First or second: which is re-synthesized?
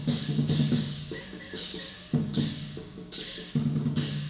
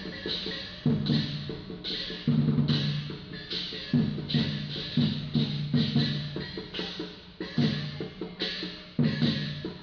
first